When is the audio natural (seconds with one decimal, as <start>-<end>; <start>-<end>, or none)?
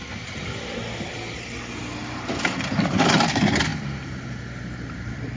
0.0-5.4